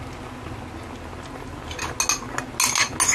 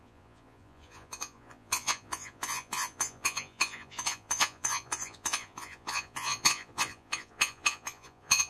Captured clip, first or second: first